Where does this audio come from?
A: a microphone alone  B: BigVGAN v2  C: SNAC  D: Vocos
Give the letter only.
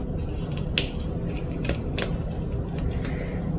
A